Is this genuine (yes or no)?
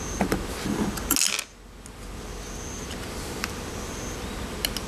yes